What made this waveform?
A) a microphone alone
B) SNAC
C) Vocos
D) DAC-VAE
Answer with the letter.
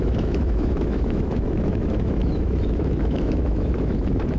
D